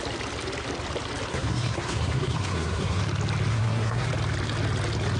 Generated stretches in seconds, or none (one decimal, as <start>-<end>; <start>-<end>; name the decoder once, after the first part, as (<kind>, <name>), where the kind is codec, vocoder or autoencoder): 1.3-3.0 (codec, SNAC); 3.5-4.1